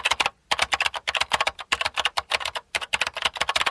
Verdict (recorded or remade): recorded